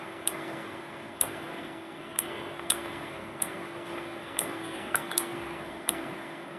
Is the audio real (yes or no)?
no